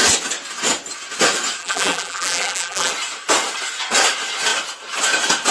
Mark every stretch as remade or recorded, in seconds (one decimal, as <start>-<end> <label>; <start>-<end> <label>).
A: 0.0-1.6 recorded; 1.6-2.9 remade; 2.9-5.5 recorded